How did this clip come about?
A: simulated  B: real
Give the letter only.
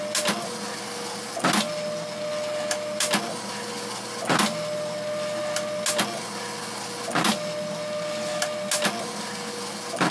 B